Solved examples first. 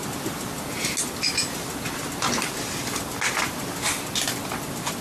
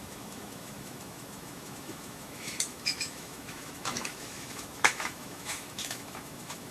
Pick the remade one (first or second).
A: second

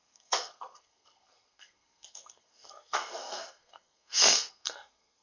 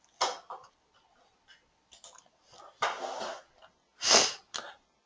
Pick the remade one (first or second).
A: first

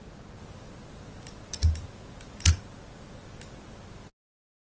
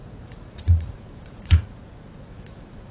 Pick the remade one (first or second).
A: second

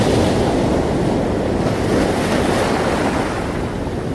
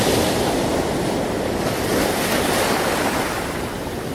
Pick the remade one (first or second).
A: second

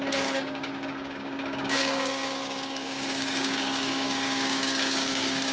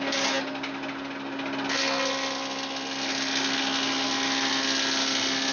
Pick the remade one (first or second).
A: first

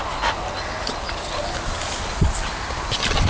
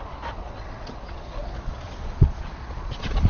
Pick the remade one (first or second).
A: second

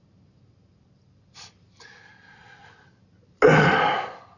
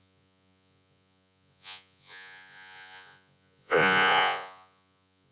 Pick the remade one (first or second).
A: second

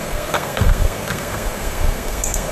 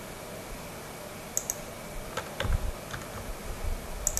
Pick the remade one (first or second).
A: first